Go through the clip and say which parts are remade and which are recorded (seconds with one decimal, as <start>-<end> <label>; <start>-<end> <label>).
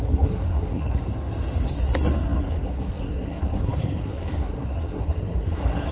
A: 0.0-1.0 remade; 1.0-1.7 recorded; 1.7-5.9 remade